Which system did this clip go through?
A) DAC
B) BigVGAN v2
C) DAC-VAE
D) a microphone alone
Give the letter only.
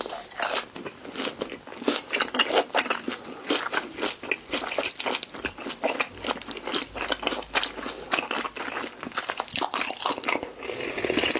D